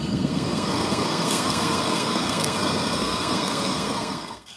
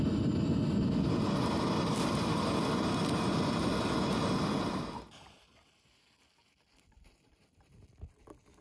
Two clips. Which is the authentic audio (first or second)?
second